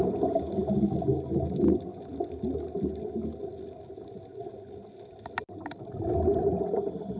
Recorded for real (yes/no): yes